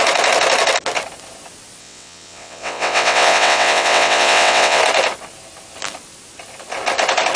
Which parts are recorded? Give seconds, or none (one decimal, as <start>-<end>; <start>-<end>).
0.0-1.8; 4.8-7.4